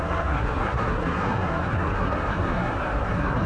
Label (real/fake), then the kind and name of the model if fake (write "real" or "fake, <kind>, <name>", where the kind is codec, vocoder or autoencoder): fake, codec, SNAC